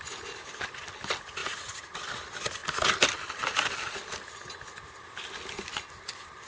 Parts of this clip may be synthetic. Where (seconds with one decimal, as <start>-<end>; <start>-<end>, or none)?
1.4-1.9